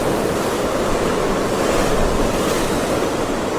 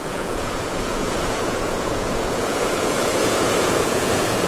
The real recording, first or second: first